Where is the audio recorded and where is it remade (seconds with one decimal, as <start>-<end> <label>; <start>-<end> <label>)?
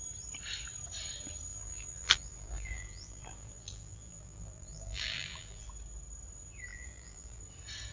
0.0-1.5 recorded; 1.5-5.7 remade; 5.7-6.7 recorded; 6.7-7.4 remade; 7.4-7.9 recorded